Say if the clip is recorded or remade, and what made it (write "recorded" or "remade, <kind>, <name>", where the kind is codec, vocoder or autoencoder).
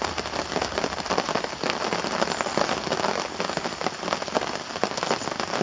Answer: recorded